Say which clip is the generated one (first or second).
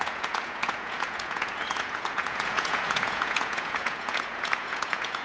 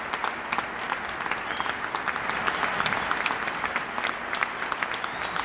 first